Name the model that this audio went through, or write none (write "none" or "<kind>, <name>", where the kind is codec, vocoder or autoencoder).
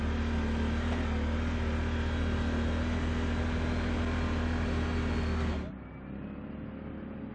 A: none